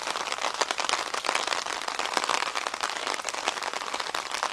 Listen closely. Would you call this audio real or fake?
real